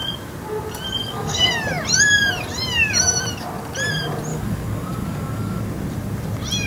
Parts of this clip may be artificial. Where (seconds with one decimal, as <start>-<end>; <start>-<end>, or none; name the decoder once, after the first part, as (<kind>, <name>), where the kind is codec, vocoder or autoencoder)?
1.0-1.5 (codec, DAC); 4.3-5.6